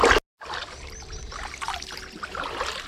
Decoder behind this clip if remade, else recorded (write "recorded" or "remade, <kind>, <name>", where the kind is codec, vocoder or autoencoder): recorded